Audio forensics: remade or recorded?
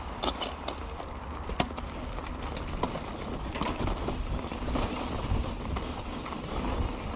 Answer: recorded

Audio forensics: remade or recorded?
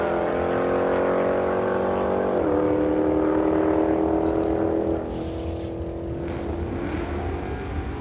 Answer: recorded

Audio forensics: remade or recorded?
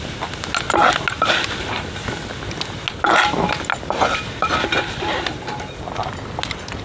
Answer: recorded